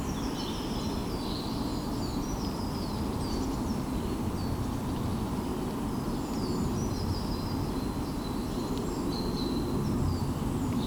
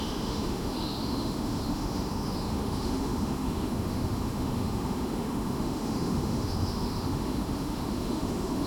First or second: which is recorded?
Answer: first